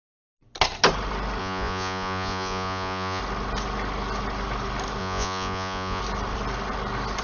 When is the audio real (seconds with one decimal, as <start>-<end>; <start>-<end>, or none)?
0.0-1.4; 3.2-5.0; 6.0-7.2